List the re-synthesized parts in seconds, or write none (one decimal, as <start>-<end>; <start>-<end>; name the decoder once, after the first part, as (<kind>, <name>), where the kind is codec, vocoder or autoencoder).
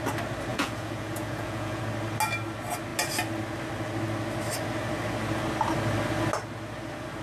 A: 0.5-1.8 (vocoder, Vocos)